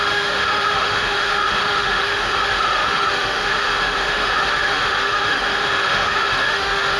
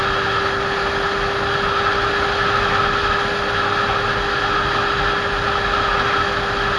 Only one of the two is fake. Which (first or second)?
first